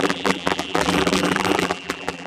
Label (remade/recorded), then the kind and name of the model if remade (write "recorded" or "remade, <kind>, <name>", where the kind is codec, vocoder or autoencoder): remade, vocoder, BigVGAN v2